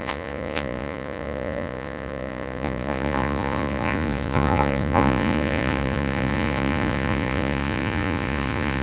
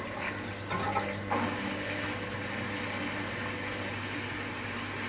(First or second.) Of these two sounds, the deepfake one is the first